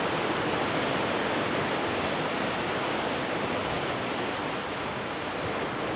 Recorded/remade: recorded